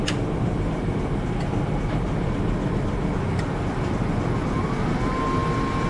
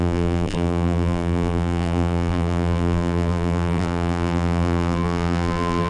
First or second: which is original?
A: first